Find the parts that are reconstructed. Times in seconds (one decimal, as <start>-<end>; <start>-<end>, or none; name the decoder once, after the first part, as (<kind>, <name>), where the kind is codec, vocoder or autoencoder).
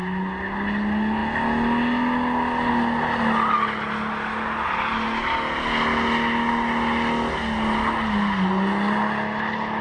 none